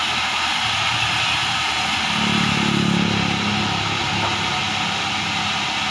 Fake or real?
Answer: real